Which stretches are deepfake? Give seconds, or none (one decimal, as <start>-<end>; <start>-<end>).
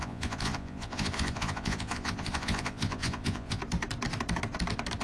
0.0-3.6